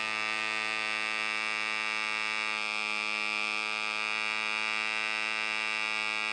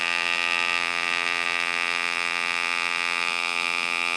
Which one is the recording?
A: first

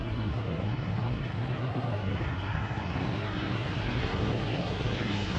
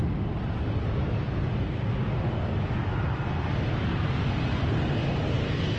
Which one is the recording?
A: second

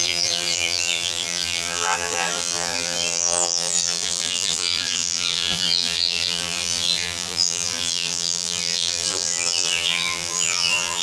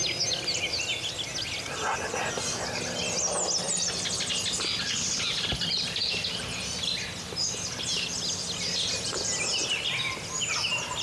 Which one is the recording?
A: second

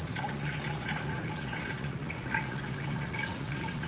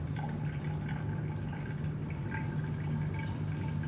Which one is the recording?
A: second